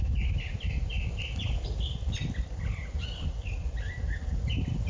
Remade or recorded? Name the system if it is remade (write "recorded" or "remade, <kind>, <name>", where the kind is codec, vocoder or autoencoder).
recorded